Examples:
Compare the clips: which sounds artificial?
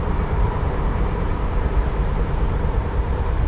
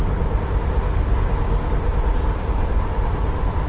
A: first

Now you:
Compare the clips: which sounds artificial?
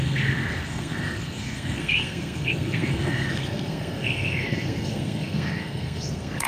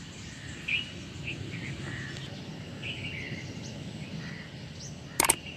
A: first